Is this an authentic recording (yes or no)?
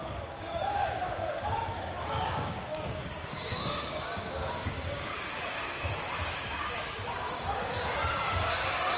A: no